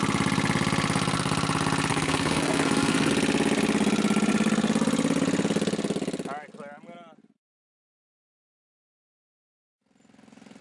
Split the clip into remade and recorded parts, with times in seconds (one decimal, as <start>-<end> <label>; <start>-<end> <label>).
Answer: 0.0-1.9 recorded; 1.9-3.1 remade; 3.1-10.6 recorded